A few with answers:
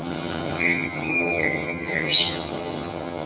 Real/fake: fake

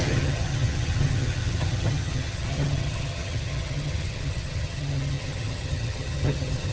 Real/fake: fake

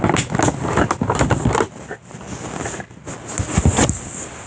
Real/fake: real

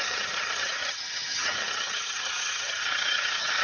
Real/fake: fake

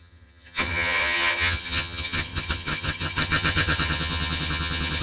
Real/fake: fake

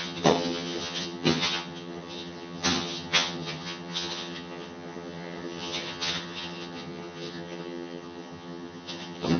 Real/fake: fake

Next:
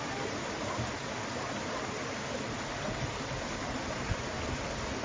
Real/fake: real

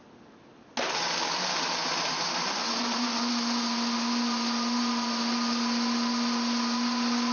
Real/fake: real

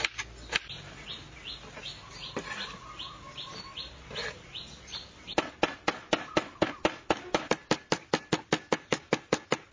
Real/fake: real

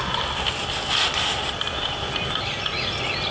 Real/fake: real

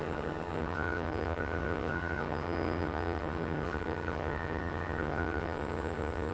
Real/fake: fake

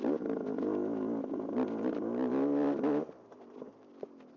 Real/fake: real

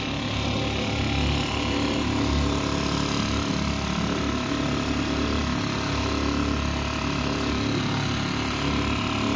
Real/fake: real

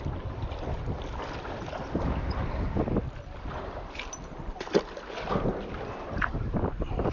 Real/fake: real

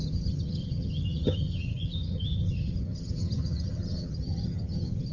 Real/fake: fake